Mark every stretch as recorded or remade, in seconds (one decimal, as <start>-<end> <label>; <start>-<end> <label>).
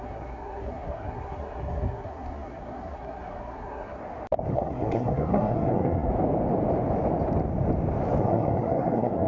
0.0-4.0 remade; 4.0-4.5 recorded; 4.5-6.1 remade; 6.1-8.2 recorded; 8.2-9.3 remade